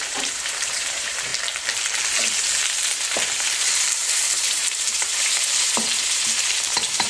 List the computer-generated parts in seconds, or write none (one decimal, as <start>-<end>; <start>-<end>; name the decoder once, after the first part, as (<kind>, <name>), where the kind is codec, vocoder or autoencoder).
0.0-1.3 (vocoder, BigVGAN v2); 2.6-7.1